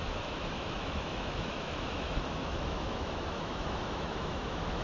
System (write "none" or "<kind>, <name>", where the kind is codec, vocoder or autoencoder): autoencoder, DAC-VAE